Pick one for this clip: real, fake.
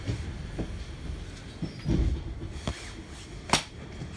real